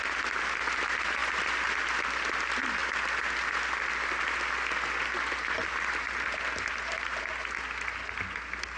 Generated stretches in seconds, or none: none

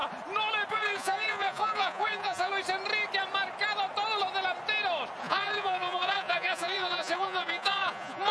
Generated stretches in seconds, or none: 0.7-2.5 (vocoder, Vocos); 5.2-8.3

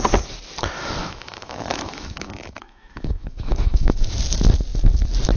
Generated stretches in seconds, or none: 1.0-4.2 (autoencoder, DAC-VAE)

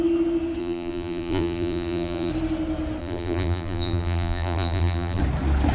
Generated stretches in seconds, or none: 0.6-2.3 (vocoder, BigVGAN v2); 3.0-5.2